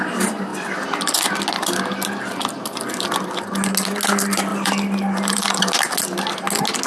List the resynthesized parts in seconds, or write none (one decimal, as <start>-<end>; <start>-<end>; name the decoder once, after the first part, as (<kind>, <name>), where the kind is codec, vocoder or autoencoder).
4.5-5.6 (vocoder, BigVGAN v2)